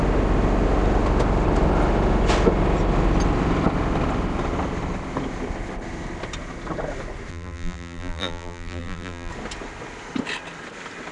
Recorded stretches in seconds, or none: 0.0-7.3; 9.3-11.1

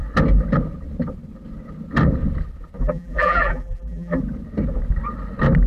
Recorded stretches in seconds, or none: 0.0-2.8; 4.2-5.7

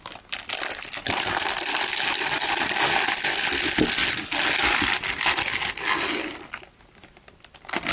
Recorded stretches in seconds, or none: 0.0-7.9

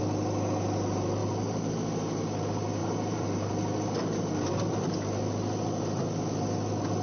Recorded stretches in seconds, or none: 0.0-2.8; 3.5-7.0